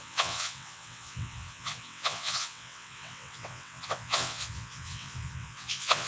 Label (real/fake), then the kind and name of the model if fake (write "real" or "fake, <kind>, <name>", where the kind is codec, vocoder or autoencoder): fake, vocoder, WaveNeXt